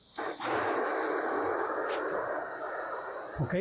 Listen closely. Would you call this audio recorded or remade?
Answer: recorded